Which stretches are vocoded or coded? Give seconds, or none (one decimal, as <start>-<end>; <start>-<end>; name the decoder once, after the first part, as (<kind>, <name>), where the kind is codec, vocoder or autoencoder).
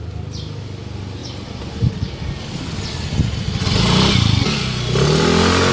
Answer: none